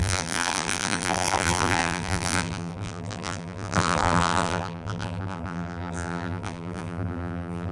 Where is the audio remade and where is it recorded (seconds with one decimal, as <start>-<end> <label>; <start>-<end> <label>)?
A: 0.0-7.7 remade